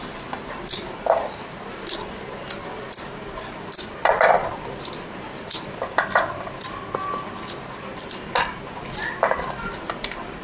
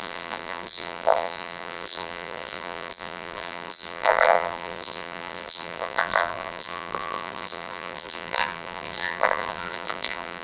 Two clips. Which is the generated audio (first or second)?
second